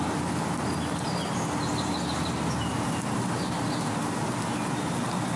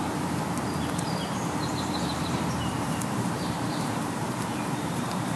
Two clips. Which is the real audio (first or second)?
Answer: first